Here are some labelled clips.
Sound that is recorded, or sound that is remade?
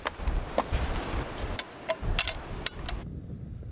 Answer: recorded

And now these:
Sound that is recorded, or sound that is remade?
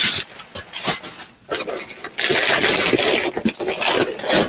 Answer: recorded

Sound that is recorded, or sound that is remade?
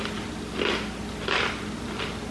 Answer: recorded